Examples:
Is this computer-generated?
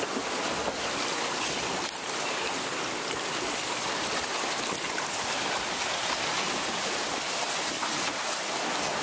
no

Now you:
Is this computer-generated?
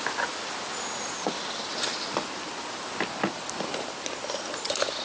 no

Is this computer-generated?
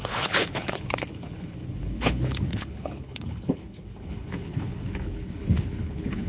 yes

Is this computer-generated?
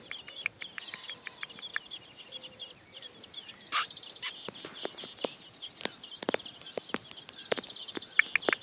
no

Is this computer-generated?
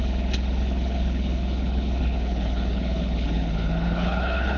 yes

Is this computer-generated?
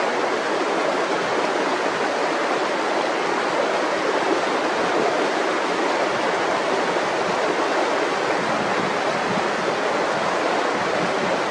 no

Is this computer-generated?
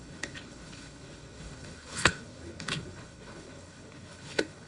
yes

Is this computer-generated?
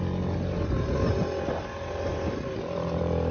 no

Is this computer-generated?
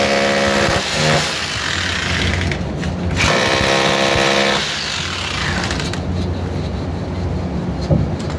no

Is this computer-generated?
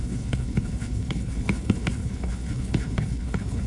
yes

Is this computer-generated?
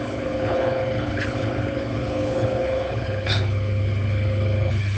yes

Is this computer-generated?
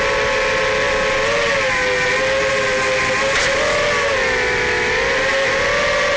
no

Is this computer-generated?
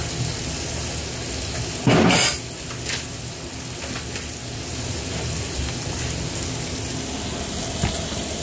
no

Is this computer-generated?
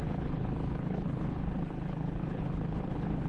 yes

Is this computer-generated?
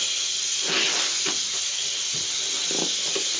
no